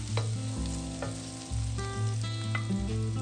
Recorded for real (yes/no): yes